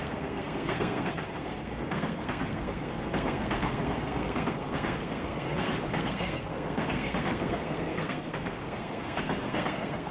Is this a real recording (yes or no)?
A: no